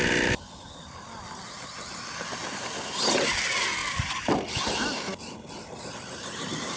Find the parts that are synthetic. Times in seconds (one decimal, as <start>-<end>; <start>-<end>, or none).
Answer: none